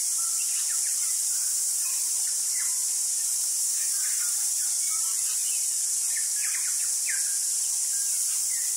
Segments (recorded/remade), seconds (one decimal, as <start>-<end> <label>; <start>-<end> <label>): 0.0-0.9 recorded; 0.9-4.7 remade; 4.7-5.4 recorded; 5.4-5.9 remade; 5.9-8.8 recorded